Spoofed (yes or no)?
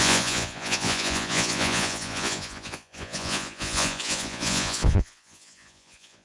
yes